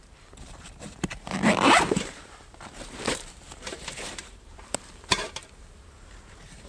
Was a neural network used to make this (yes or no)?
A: yes